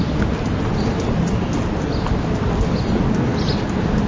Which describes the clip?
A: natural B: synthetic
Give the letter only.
A